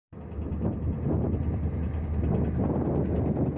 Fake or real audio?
real